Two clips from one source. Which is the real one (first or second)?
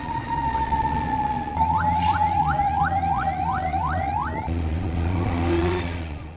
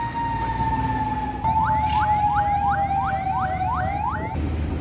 second